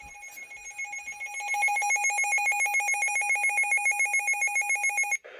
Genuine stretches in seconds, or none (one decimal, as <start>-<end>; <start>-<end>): 0.0-5.4